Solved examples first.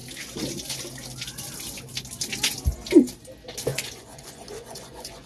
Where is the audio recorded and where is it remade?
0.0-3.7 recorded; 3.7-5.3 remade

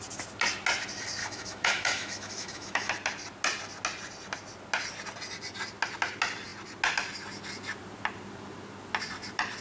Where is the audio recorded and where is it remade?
0.0-1.2 recorded; 1.2-2.9 remade; 2.9-9.6 recorded

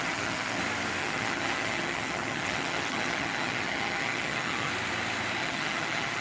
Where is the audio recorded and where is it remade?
0.0-0.6 remade; 0.6-1.0 recorded; 1.0-4.7 remade; 4.7-5.4 recorded; 5.4-6.2 remade

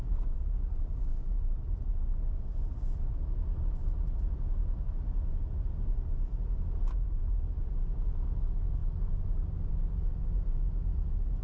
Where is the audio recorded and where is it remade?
0.0-1.1 recorded; 1.1-1.9 remade; 1.9-11.4 recorded

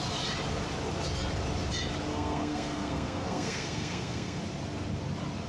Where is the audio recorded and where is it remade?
0.0-2.1 recorded; 2.1-4.4 remade; 4.4-5.5 recorded

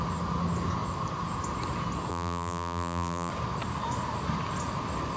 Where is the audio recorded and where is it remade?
0.0-2.1 recorded; 2.1-3.3 remade; 3.3-5.2 recorded